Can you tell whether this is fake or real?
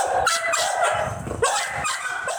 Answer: real